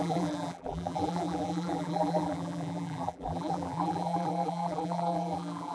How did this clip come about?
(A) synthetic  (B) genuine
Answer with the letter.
A